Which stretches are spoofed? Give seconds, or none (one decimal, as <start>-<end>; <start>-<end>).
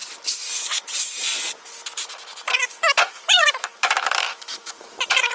2.0-5.3